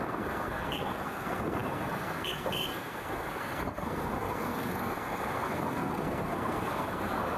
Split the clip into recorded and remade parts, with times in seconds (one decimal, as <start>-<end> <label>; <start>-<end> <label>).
0.0-7.4 remade